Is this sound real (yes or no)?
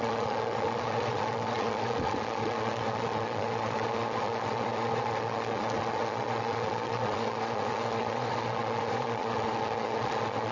no